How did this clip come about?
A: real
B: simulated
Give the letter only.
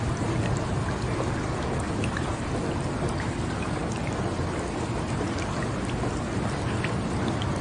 A